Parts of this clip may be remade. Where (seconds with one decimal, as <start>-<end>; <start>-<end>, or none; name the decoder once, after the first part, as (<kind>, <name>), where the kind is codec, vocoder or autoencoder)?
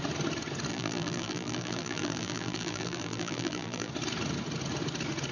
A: 0.7-3.9 (vocoder, BigVGAN v2)